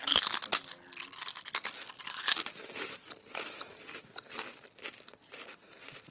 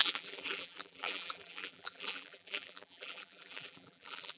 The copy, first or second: second